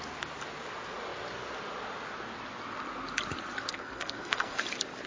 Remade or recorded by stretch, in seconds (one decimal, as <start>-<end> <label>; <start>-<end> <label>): 0.0-3.7 recorded; 3.7-4.6 remade; 4.6-5.1 recorded